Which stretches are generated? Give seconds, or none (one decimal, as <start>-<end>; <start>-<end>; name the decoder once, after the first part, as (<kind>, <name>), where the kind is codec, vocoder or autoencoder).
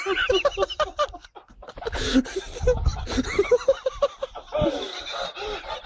none